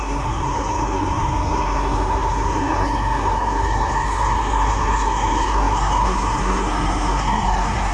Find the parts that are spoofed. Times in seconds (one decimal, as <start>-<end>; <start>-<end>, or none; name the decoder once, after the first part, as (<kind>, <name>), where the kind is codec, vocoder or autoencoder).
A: 0.0-7.9 (codec, SNAC)